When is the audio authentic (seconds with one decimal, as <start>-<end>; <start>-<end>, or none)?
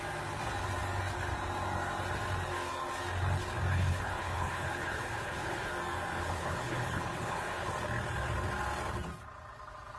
0.0-3.7; 5.7-6.2; 7.7-10.0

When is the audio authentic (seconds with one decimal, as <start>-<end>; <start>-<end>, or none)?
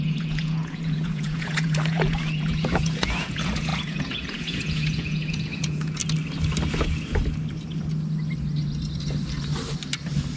6.0-10.4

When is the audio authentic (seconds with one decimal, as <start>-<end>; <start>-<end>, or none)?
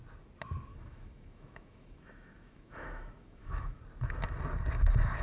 0.0-0.7; 3.8-5.2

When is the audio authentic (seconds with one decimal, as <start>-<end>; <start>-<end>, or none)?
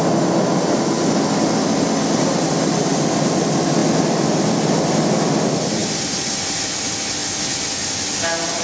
0.0-8.6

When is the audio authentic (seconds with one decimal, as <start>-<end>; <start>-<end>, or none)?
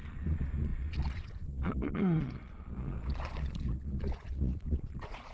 none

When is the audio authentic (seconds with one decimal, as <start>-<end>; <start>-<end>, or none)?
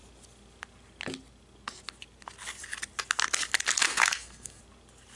0.0-3.9; 4.6-5.2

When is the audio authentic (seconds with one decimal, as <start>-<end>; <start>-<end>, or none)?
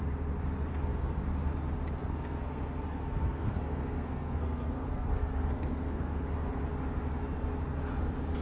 0.0-0.7; 1.2-2.0; 6.6-8.4